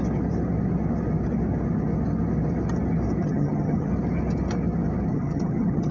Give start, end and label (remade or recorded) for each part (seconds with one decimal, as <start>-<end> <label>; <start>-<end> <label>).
0.0-3.2 recorded; 3.2-3.9 remade; 3.9-5.1 recorded; 5.1-5.9 remade